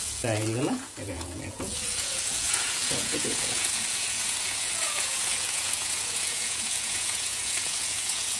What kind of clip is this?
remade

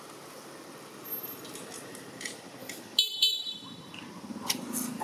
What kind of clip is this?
recorded